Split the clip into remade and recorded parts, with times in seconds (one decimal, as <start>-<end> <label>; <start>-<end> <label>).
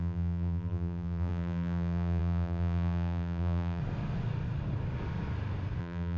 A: 0.0-3.8 remade; 3.8-5.8 recorded; 5.8-6.2 remade